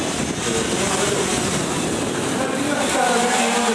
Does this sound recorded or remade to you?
recorded